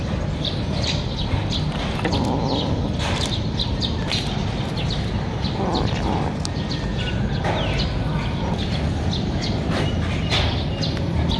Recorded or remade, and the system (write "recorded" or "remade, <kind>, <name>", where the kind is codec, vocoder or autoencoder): recorded